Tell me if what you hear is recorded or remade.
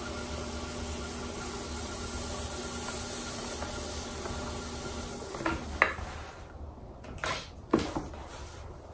recorded